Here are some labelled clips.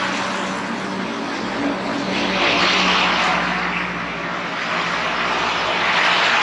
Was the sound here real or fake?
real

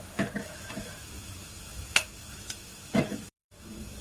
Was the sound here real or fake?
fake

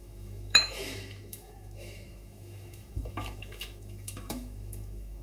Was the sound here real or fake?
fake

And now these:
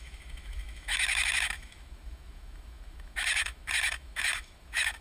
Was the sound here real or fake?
fake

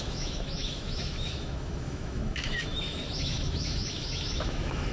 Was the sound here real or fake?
fake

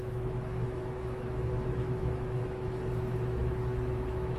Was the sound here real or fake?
fake